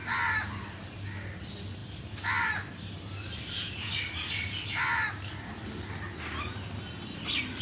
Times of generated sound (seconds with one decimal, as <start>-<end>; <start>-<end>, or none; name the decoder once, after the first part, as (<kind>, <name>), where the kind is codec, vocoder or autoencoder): 0.5-1.8 (vocoder, BigVGAN v2); 5.1-7.6